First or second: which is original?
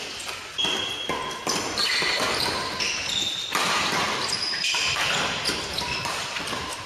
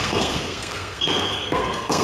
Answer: first